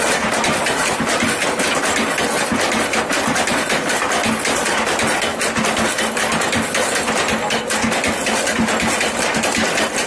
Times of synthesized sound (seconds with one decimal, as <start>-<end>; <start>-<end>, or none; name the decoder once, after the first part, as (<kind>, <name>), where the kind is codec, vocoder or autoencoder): none